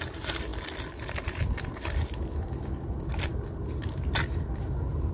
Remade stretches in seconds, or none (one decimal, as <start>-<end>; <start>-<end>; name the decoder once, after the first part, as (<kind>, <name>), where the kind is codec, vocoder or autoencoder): none